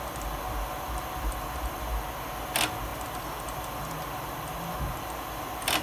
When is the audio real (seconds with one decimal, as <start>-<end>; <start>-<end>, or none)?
0.0-5.8